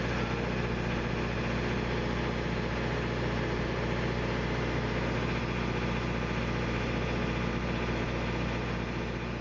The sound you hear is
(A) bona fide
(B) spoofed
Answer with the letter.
A